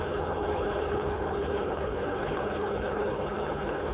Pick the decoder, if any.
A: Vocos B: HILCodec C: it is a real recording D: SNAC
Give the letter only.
B